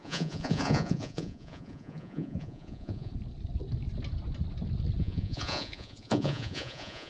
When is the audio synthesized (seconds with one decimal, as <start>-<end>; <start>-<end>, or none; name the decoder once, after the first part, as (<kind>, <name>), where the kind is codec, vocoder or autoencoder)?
0.0-3.1 (vocoder, Vocos); 5.0-7.1